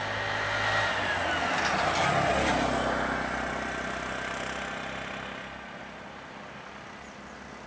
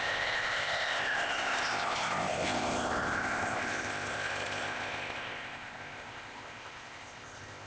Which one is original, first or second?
first